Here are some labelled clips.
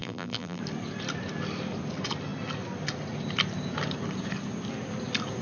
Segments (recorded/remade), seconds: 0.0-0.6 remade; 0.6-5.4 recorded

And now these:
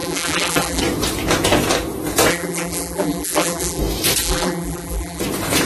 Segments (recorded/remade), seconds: 0.0-0.8 remade; 0.8-2.3 recorded; 2.3-3.8 remade; 3.8-4.2 recorded; 4.2-5.2 remade; 5.2-5.7 recorded